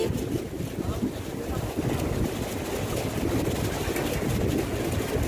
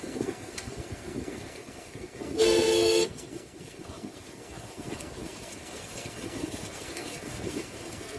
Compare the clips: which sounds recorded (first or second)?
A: first